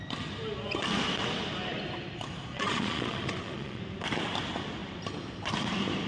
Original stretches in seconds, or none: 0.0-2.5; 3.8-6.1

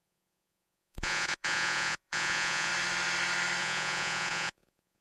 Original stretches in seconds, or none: 2.7-3.6

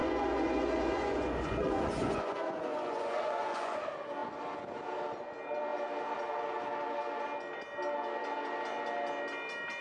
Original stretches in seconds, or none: 3.8-9.8